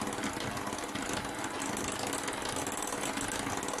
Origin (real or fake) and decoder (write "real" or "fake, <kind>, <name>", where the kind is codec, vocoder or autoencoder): real